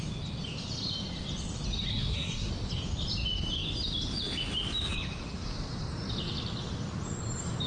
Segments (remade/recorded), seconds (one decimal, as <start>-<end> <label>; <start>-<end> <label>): 0.0-1.9 recorded; 1.9-2.5 remade; 2.5-7.7 recorded